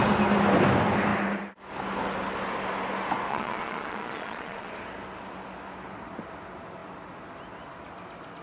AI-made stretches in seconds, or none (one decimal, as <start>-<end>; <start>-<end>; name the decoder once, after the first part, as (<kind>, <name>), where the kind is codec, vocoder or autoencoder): 3.3-4.7 (vocoder, Vocos)